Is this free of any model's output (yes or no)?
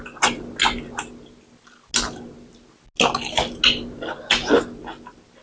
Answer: yes